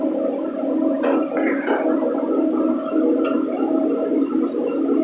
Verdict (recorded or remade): recorded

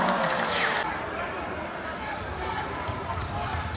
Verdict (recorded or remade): remade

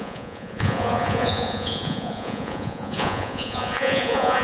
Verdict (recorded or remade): remade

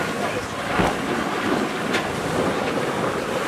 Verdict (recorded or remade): recorded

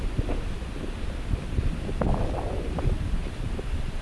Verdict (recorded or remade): recorded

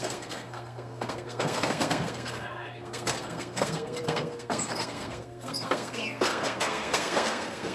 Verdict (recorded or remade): remade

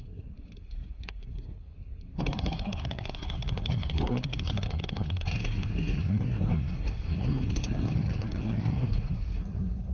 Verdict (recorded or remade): remade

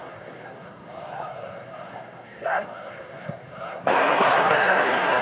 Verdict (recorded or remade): remade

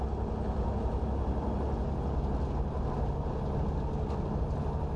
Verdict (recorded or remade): recorded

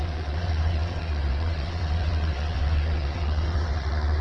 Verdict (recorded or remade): remade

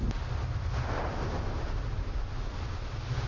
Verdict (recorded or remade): recorded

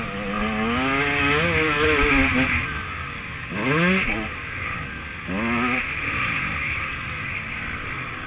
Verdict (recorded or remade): recorded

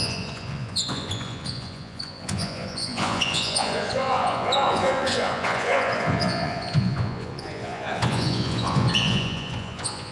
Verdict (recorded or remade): remade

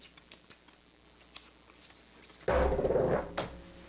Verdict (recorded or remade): recorded